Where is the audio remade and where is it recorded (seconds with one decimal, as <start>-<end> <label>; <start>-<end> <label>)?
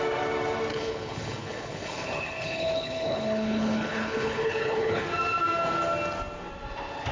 0.0-0.7 recorded; 0.7-5.0 remade; 5.0-7.1 recorded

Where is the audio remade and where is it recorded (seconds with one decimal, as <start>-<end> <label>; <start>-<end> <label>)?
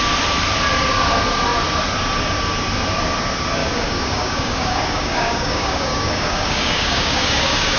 0.0-3.6 recorded; 3.6-7.8 remade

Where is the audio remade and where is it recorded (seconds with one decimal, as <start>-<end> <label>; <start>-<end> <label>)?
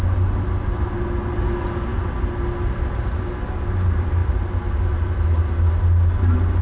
0.0-6.6 recorded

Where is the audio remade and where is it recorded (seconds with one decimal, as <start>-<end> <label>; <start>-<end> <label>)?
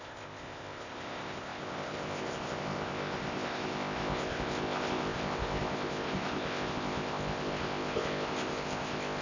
0.0-9.2 remade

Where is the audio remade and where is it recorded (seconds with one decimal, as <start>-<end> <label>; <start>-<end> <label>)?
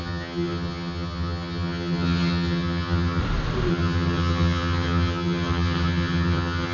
0.0-3.2 remade; 3.2-3.7 recorded; 3.7-6.7 remade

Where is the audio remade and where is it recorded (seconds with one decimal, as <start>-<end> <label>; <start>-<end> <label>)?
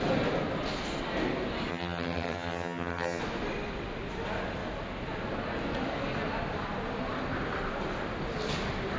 0.0-1.7 recorded; 1.7-3.2 remade; 3.2-9.0 recorded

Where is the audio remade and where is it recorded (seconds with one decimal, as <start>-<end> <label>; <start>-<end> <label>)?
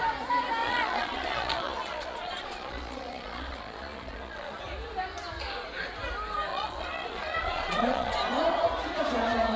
0.0-0.6 recorded; 0.6-4.6 remade; 4.6-6.5 recorded; 6.5-8.1 remade; 8.1-9.6 recorded